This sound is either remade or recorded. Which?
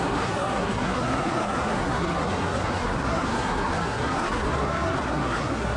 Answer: remade